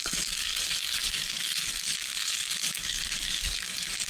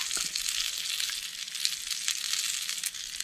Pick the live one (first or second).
second